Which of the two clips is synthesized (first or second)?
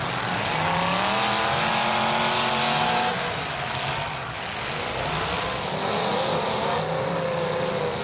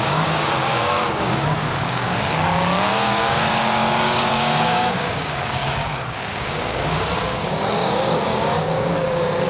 second